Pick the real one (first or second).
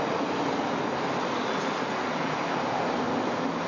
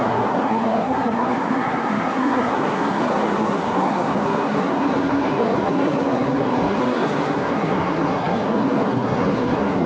first